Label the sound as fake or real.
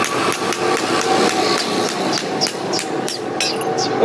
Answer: real